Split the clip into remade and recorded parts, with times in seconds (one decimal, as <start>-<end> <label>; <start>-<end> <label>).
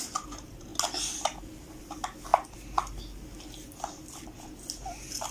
0.0-5.3 recorded